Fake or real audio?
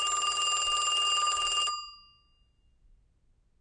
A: real